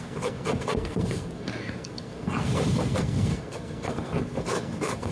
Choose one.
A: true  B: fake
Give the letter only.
B